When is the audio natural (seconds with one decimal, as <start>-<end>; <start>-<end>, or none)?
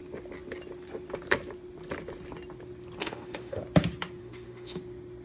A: 0.0-3.0; 3.6-4.2; 4.8-5.2